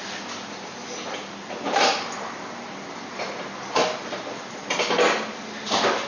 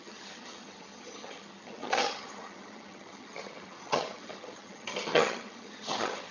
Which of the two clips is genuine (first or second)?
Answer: first